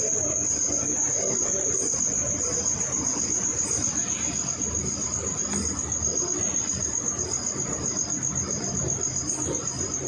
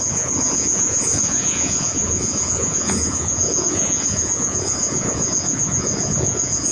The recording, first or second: first